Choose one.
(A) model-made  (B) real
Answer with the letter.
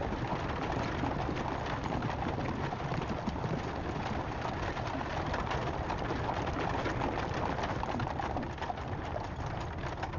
B